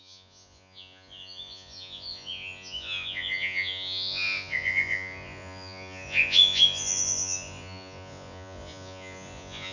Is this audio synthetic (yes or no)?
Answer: yes